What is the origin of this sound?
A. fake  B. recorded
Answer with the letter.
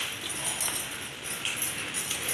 B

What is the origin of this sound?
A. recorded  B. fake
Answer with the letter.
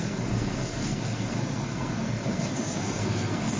B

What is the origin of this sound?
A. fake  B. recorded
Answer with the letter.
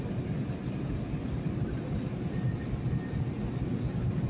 B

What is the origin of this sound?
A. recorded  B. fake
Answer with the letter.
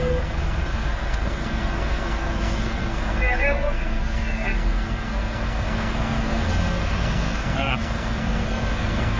B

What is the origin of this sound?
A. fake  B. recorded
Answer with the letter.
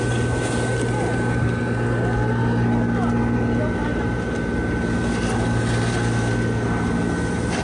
B